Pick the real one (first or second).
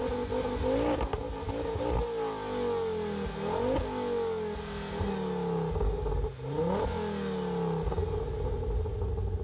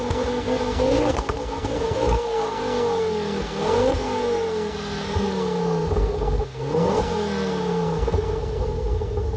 first